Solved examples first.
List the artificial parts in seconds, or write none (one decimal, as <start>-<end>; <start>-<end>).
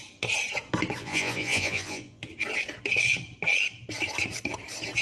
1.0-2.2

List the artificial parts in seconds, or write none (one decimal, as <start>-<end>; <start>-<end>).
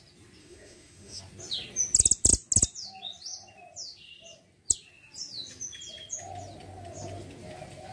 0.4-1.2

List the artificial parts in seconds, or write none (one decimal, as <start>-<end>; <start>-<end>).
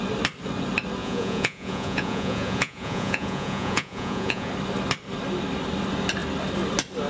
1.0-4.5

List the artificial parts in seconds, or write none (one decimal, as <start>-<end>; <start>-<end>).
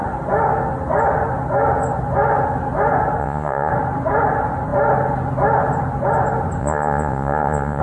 3.2-3.7; 6.6-7.8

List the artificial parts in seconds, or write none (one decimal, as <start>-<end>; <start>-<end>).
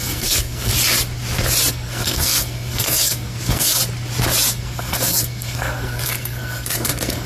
0.0-0.7; 1.7-3.8; 4.5-7.3